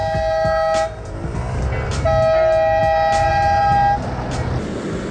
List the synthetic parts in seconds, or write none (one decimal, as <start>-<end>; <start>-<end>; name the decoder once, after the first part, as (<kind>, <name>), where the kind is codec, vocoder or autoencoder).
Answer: none